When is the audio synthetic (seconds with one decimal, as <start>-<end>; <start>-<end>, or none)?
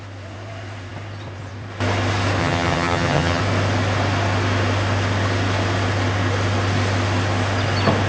2.4-3.4